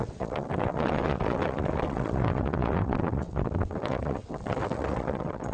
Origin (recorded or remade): remade